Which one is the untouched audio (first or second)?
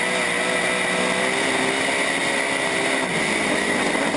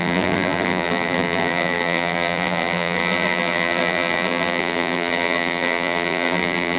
first